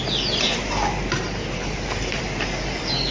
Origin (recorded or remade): recorded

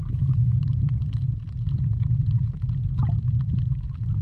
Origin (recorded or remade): recorded